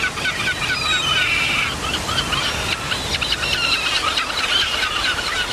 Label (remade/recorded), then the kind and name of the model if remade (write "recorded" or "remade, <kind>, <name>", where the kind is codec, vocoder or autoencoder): recorded